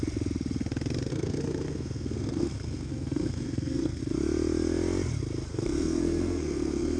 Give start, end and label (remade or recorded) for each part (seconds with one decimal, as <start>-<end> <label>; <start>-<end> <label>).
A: 0.0-1.1 recorded; 1.1-4.0 remade; 4.0-5.5 recorded; 5.5-7.0 remade